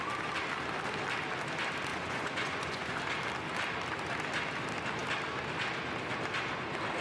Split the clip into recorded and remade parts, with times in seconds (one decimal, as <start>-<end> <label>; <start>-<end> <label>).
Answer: 0.0-1.9 recorded; 1.9-3.0 remade; 3.0-7.0 recorded